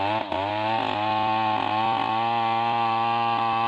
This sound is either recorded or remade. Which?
recorded